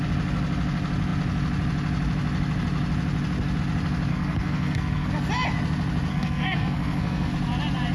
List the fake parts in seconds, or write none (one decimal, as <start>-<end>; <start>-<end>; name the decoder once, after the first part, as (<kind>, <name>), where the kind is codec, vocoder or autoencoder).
4.1-5.1 (codec, SNAC); 6.1-7.3